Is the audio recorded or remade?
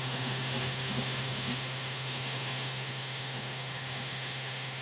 remade